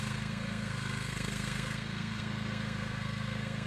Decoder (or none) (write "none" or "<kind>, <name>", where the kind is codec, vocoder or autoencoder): codec, SNAC